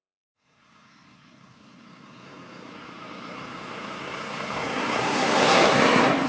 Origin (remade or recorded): remade